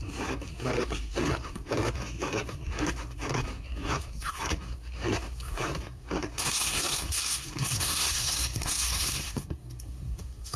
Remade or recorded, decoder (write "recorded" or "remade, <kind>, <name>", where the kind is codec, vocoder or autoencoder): remade, codec, SNAC